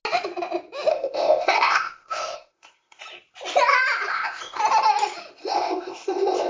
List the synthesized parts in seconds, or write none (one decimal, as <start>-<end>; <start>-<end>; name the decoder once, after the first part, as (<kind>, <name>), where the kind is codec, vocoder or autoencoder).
0.9-3.0 (codec, ZipCodec); 4.1-4.6; 5.4-6.5